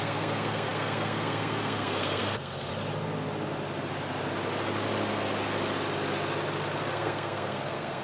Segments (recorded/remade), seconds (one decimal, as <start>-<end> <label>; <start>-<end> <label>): 0.0-2.7 remade; 2.7-6.9 recorded; 6.9-8.0 remade